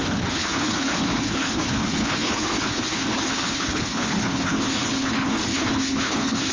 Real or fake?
fake